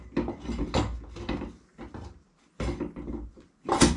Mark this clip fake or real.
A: real